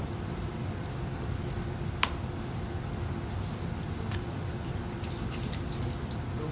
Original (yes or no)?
yes